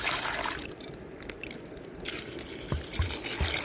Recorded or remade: recorded